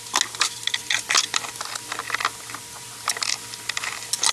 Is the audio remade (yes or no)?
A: no